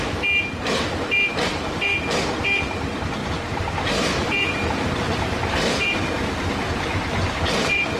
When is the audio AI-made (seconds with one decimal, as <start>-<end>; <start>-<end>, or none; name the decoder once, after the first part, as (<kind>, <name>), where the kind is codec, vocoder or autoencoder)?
3.2-8.0 (vocoder, BigVGAN v2)